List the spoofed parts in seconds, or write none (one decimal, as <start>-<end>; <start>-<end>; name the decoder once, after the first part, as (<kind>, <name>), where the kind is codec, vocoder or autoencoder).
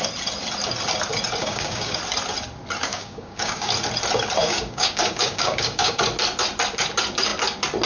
1.4-2.0 (codec, DAC); 2.9-3.7; 4.4-6.0